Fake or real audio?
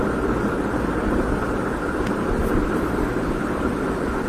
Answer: real